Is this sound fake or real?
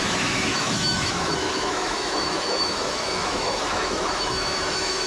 fake